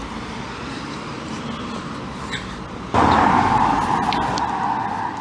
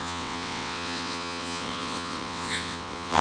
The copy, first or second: second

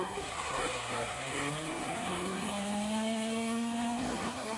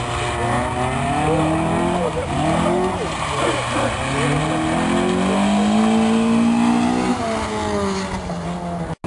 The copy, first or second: first